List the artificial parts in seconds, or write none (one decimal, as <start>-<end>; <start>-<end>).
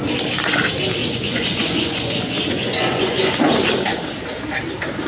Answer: 1.0-3.3